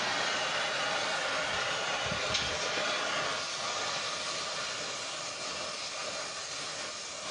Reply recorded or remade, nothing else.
recorded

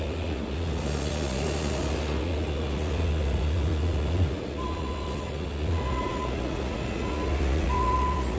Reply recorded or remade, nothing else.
remade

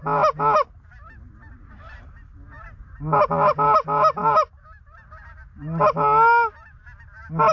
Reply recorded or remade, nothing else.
recorded